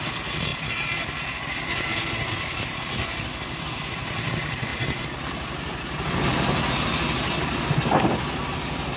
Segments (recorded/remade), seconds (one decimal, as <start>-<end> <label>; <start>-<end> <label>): 0.0-9.0 remade